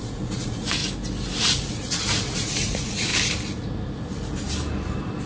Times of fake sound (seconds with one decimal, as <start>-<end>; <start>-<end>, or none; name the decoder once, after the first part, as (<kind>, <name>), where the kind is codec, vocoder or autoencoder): 0.0-0.8 (vocoder, Vocos); 1.4-3.1